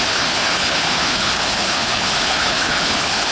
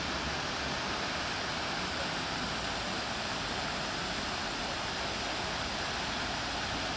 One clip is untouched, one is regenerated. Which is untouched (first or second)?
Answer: second